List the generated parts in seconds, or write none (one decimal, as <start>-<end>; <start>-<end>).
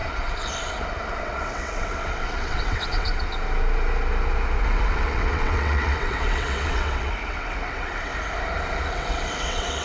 1.2-3.1; 4.6-8.1; 8.9-9.8